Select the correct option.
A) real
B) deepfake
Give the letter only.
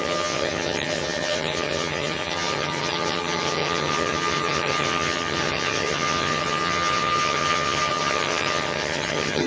B